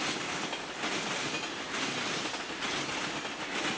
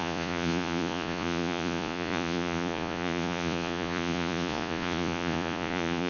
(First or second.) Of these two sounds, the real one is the first